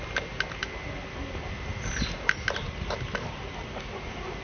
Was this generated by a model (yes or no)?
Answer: no